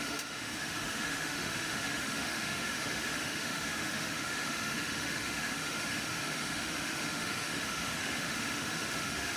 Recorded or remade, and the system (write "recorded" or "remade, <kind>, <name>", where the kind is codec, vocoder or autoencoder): remade, autoencoder, DAC-VAE